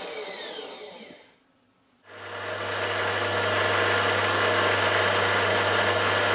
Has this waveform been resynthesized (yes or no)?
no